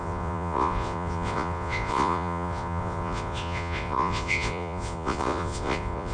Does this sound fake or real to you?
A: fake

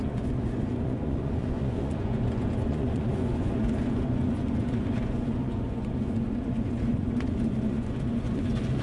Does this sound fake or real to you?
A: fake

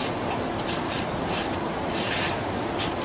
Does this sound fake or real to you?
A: real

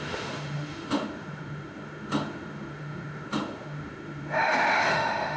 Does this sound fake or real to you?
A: fake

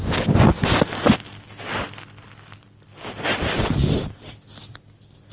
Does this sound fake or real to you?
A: real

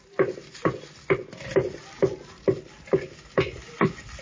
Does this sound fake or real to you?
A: real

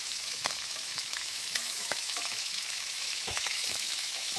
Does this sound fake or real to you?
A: fake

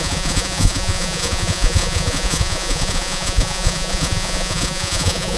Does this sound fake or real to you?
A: fake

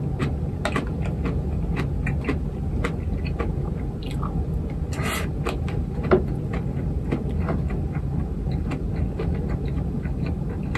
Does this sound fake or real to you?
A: real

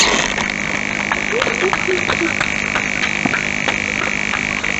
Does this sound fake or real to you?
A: real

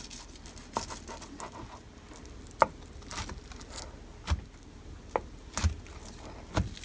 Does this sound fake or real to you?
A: real